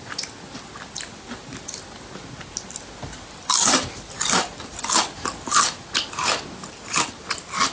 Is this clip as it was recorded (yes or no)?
yes